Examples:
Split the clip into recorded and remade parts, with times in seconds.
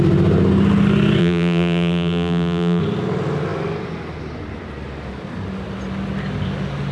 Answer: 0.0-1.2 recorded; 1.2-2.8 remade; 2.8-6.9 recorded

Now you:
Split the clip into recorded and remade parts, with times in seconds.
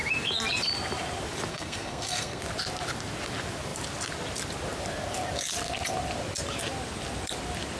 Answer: 0.0-1.5 recorded; 1.5-2.4 remade; 2.4-7.8 recorded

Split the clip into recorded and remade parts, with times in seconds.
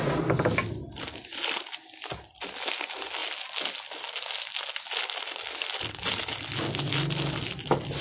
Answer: 0.0-8.0 recorded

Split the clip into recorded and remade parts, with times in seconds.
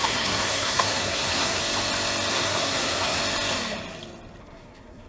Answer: 0.0-1.6 remade; 1.6-2.3 recorded; 2.3-3.2 remade; 3.2-4.4 recorded; 4.4-5.1 remade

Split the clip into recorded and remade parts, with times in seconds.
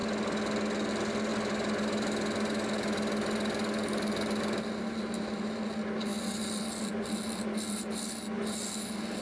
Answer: 0.0-9.2 recorded